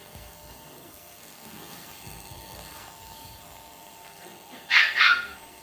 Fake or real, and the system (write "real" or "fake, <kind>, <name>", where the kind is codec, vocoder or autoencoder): fake, codec, SNAC